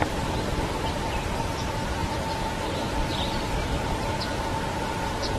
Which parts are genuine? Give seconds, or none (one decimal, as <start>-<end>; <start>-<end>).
0.0-5.4